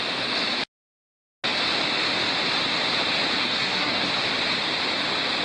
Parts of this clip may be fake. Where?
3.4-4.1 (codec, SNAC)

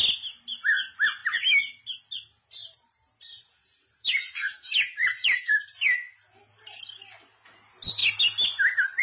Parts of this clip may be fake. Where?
2.6-5.5 (vocoder, BigVGAN v2)

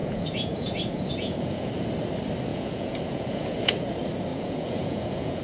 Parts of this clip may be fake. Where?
0.0-1.7 (vocoder, Vocos); 2.5-3.8; 4.3-5.4